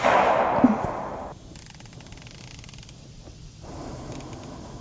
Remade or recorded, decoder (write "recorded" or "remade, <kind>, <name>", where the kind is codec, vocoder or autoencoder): recorded